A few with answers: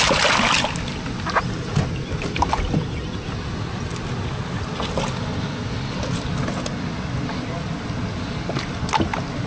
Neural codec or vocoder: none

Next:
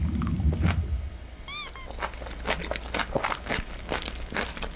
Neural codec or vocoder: none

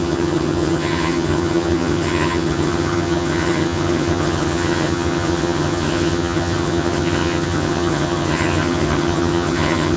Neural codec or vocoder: vocoder, HiFi-GAN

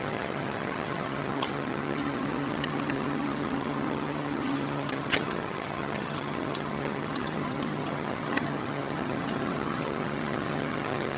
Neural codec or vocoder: vocoder, HiFi-GAN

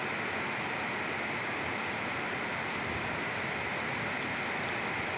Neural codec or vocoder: none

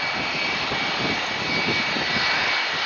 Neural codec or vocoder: none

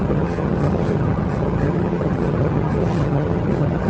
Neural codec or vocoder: vocoder, HiFi-GAN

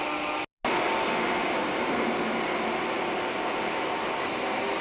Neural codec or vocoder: none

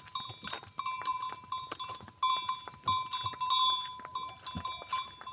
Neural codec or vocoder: none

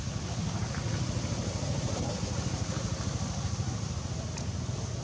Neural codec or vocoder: none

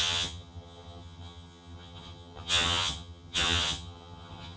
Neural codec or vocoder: vocoder, HiFi-GAN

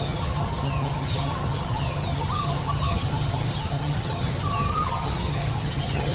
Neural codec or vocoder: vocoder, HiFi-GAN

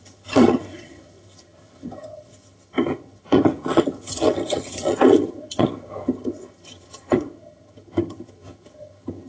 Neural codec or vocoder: vocoder, HiFi-GAN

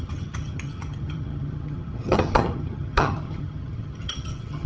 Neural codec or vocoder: vocoder, HiFi-GAN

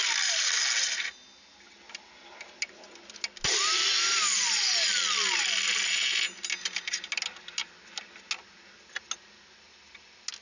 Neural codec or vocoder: none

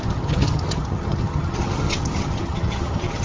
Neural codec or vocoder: vocoder, HiFi-GAN